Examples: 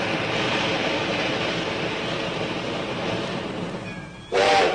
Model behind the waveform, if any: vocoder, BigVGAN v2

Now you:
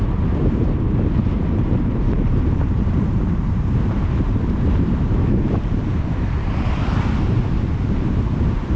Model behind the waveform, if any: vocoder, BigVGAN v2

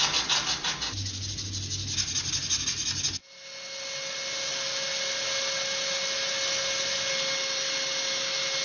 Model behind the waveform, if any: none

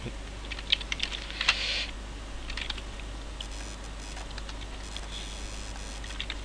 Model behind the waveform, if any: none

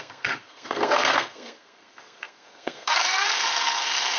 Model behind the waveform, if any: codec, SNAC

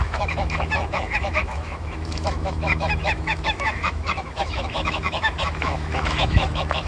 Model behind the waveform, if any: autoencoder, DAC-VAE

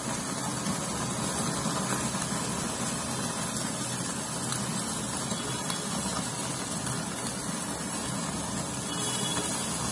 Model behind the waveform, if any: none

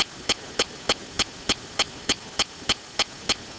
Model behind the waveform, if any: none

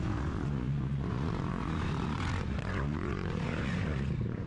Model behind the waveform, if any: vocoder, Vocos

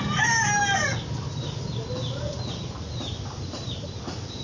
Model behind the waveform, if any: none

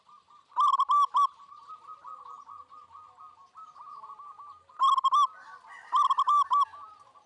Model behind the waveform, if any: none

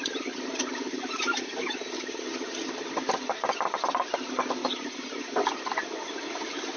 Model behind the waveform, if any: none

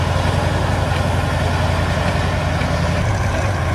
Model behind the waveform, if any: none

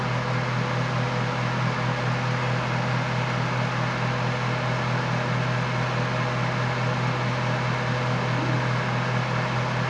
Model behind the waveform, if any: none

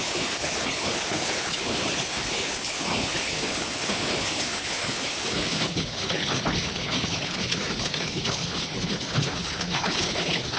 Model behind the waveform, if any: codec, HILCodec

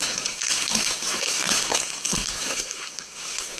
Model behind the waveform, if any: codec, SNAC